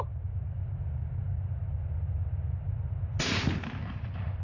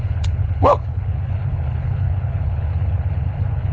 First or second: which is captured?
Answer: first